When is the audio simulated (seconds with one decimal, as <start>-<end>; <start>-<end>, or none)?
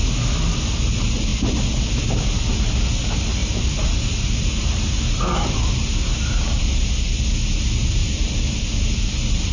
3.4-6.6; 8.0-8.8